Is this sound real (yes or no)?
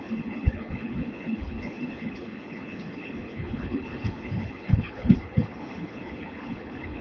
no